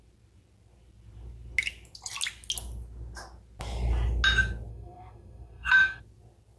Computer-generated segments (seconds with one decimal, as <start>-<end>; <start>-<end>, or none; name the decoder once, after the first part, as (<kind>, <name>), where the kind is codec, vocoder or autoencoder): 4.7-6.0 (codec, SNAC)